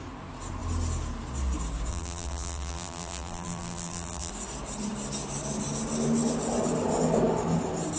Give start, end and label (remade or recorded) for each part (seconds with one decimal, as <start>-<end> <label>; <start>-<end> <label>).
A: 0.0-1.9 recorded; 1.9-4.3 remade; 4.3-8.0 recorded